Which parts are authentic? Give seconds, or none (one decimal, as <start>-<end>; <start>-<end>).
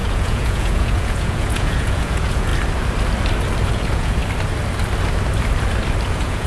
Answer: 2.5-3.7; 4.2-6.1